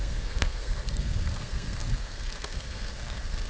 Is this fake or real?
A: fake